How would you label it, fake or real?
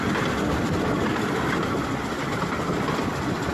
real